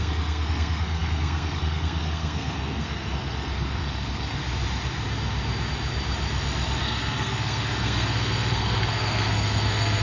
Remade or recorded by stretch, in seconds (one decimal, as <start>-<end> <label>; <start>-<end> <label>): 0.0-4.4 remade; 4.4-6.8 recorded; 6.8-10.0 remade